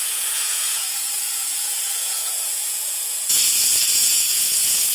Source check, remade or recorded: remade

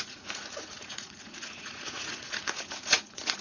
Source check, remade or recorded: remade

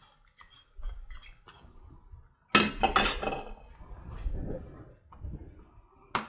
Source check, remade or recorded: recorded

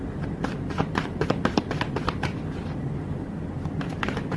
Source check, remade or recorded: remade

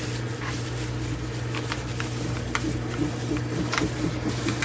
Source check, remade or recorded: recorded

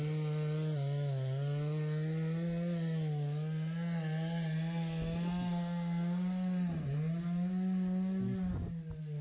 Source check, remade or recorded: recorded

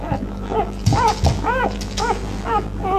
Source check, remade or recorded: remade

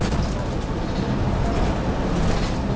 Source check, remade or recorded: recorded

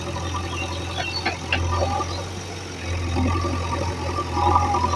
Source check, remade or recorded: recorded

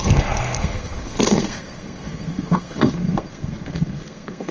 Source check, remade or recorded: remade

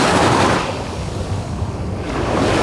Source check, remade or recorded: remade